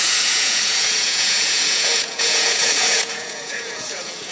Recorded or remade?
remade